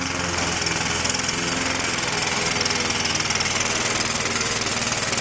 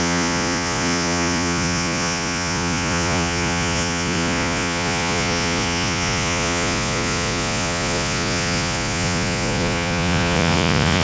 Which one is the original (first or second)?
first